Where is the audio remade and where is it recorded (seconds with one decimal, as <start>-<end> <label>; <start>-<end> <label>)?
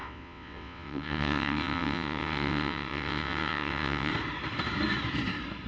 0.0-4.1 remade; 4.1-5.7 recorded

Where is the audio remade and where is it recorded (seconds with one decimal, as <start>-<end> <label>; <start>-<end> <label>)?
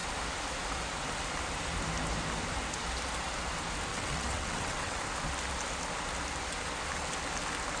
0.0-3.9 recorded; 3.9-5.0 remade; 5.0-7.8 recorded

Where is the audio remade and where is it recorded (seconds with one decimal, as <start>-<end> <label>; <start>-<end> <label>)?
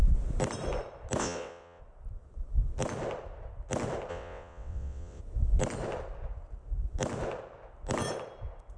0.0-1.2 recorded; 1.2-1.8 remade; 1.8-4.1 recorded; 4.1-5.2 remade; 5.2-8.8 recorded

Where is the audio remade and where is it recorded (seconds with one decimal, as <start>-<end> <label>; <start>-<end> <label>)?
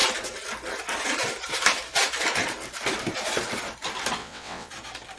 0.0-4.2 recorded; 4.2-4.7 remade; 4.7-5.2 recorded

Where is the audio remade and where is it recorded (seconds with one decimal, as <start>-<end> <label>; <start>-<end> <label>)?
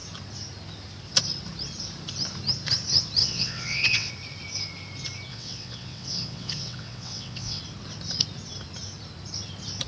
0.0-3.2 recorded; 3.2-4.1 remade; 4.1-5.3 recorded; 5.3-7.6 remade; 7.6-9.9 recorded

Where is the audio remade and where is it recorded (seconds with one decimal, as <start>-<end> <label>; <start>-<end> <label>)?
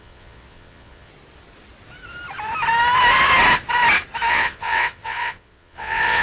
0.0-1.1 remade; 1.1-4.3 recorded; 4.3-6.2 remade